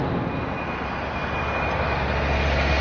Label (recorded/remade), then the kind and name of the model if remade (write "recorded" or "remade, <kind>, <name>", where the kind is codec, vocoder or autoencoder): recorded